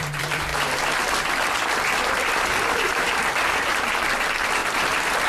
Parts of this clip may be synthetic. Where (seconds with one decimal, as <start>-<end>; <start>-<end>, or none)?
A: 0.0-4.6